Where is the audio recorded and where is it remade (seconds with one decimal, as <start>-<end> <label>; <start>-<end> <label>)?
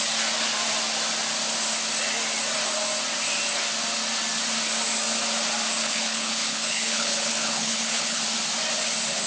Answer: 0.0-5.8 recorded; 5.8-8.2 remade; 8.2-9.3 recorded